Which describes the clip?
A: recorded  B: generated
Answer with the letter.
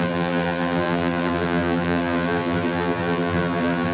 B